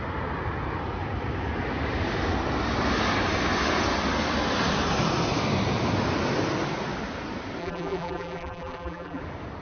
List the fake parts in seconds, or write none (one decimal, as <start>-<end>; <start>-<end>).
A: 7.6-9.2